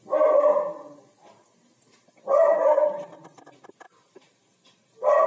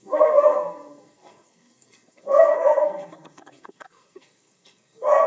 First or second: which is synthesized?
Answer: second